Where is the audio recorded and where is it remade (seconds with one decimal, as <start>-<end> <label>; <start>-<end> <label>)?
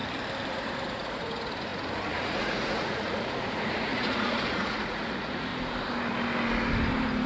0.0-0.5 recorded; 0.5-5.5 remade; 5.5-7.3 recorded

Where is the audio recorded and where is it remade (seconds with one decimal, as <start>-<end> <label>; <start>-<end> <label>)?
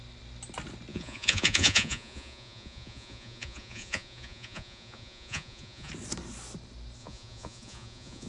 0.0-0.9 recorded; 0.9-5.9 remade; 5.9-7.0 recorded; 7.0-8.3 remade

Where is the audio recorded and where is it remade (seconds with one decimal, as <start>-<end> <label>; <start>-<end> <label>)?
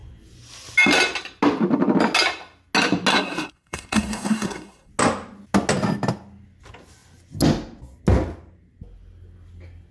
0.0-3.1 recorded; 3.1-4.9 remade; 4.9-9.9 recorded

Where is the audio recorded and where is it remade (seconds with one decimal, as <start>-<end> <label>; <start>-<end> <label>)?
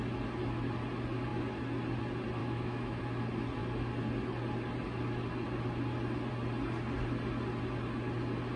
0.0-2.4 recorded; 2.4-3.0 remade; 3.0-8.6 recorded